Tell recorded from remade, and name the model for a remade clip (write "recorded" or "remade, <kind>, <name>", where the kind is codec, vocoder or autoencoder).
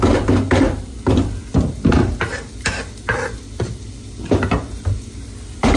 remade, vocoder, BigVGAN v2